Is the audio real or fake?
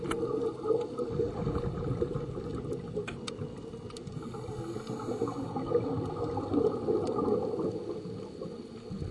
real